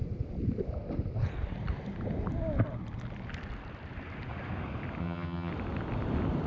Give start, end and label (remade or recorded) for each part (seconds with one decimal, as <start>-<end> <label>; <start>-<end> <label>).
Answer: 0.0-5.0 recorded; 5.0-5.5 remade; 5.5-6.5 recorded